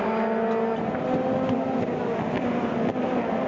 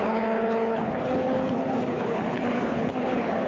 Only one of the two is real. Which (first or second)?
first